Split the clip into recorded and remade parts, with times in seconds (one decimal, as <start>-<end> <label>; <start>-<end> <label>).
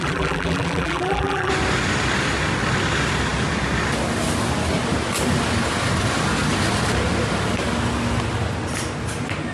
0.0-1.5 remade; 1.5-9.5 recorded